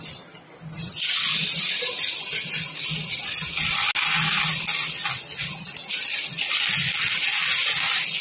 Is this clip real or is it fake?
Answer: real